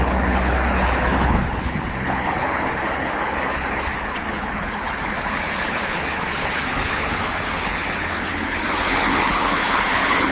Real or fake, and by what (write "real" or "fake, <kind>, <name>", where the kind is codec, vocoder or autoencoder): fake, codec, HILCodec